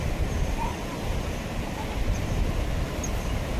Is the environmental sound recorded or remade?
remade